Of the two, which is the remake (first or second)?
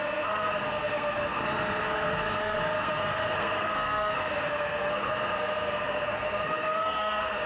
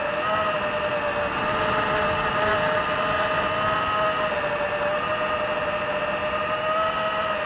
first